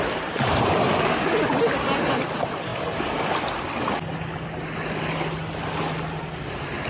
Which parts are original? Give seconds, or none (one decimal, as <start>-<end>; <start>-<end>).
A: 0.0-6.9